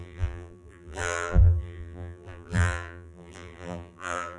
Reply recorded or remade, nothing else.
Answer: remade